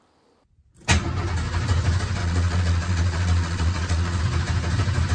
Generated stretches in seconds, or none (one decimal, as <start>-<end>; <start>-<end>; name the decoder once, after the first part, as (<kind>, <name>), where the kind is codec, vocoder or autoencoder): 2.2-4.2 (vocoder, Vocos)